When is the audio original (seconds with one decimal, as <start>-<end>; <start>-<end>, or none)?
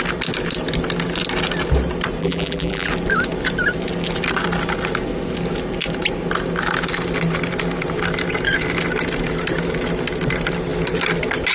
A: 0.0-2.2; 2.9-11.5